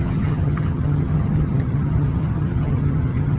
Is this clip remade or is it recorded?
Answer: remade